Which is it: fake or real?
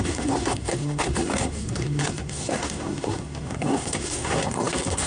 fake